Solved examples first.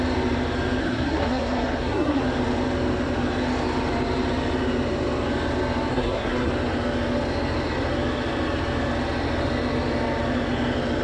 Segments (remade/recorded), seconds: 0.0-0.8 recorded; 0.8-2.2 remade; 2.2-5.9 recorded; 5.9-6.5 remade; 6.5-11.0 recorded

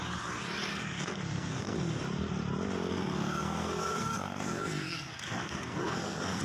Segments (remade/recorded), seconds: 0.0-0.7 recorded; 0.7-1.8 remade; 1.8-2.9 recorded; 2.9-6.4 remade

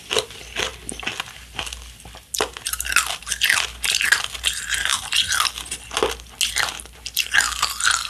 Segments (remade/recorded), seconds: 0.0-8.1 recorded

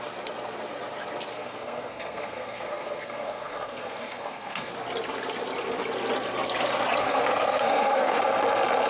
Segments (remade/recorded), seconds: 0.0-1.3 recorded; 1.3-4.7 remade; 4.7-7.0 recorded; 7.0-8.2 remade; 8.2-8.9 recorded

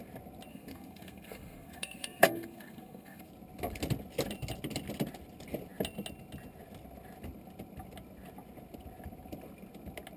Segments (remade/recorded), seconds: 0.0-0.5 recorded; 0.5-3.3 remade; 3.3-10.2 recorded

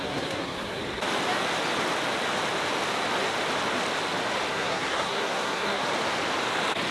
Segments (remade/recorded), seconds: 0.0-0.8 remade; 0.8-4.5 recorded; 4.5-5.8 remade; 5.8-6.9 recorded